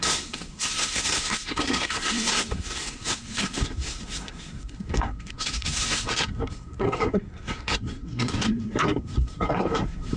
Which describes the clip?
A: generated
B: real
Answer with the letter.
A